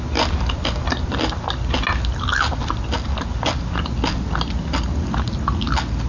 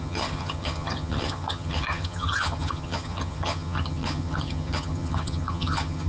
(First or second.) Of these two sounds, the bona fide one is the first